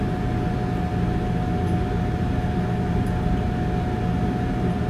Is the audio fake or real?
real